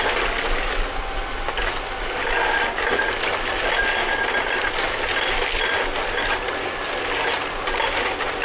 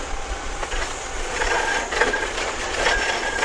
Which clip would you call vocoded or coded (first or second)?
second